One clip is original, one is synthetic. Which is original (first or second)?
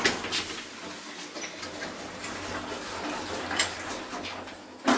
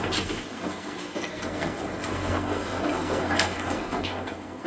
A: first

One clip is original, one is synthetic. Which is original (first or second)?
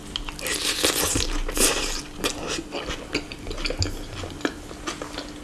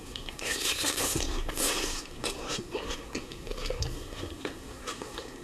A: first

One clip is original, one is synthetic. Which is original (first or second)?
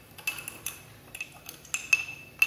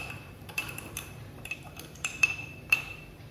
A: first